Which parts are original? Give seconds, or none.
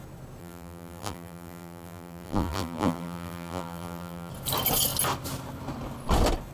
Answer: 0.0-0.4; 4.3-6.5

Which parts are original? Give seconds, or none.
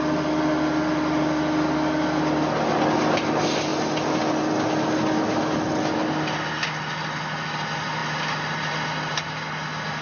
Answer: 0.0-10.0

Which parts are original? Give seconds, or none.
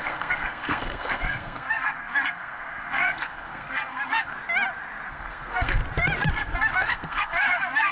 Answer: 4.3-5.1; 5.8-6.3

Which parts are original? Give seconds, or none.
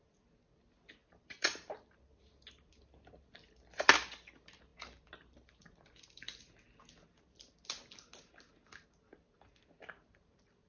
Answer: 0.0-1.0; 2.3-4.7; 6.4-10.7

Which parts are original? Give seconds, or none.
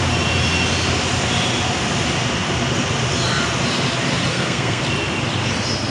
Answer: 0.0-4.3; 4.8-5.9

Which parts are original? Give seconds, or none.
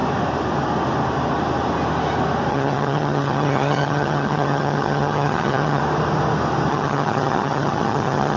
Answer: 0.0-2.5; 5.8-6.7